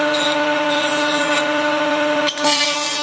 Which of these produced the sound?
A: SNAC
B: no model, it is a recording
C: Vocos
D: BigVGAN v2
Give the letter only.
C